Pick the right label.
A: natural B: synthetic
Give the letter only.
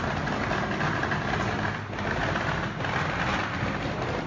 A